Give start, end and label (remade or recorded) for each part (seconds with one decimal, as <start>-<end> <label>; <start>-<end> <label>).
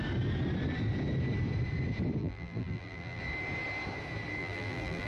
0.0-2.2 recorded; 2.2-3.2 remade; 3.2-4.4 recorded; 4.4-5.1 remade